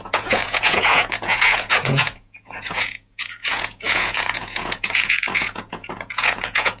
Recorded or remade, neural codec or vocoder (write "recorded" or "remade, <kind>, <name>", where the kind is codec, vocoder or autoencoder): remade, vocoder, Vocos